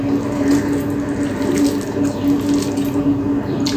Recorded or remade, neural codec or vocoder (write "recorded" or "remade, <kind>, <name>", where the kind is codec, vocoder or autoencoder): recorded